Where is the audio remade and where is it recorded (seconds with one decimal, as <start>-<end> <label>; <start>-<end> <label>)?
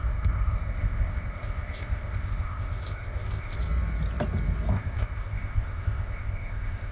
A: 0.0-3.6 remade; 3.6-4.7 recorded; 4.7-6.9 remade